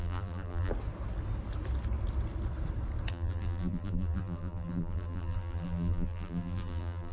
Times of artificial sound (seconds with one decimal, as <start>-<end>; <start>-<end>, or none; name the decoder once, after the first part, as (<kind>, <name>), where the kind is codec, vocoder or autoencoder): 0.0-0.7 (vocoder, BigVGAN v2); 3.1-7.1